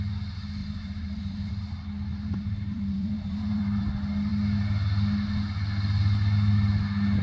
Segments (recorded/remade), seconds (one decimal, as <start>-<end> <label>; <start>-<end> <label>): 0.0-0.6 recorded; 0.6-1.5 remade; 1.5-2.1 recorded; 2.1-3.8 remade; 3.8-7.2 recorded